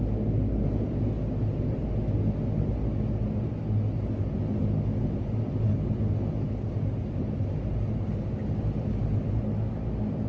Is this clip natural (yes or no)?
yes